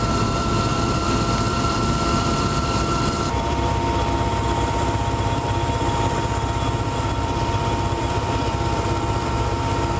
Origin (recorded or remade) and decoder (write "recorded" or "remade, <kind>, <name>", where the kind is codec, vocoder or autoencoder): remade, vocoder, BigVGAN v2